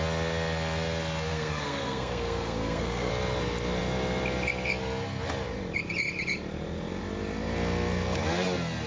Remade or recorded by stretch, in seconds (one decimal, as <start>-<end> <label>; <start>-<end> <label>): 0.0-1.3 recorded; 1.3-3.1 remade; 3.1-8.9 recorded